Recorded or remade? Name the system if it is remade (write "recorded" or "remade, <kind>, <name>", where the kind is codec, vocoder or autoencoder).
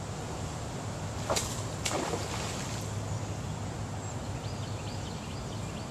recorded